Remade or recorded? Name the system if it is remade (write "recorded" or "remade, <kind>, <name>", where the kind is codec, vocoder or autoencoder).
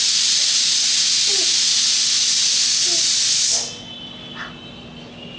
recorded